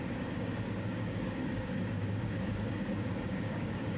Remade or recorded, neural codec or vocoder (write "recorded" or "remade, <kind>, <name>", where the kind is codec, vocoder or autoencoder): remade, codec, DAC